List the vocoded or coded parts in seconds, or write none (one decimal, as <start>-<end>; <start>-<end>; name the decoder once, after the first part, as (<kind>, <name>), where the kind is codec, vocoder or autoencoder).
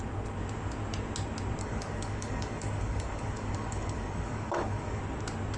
1.6-5.0 (codec, DAC)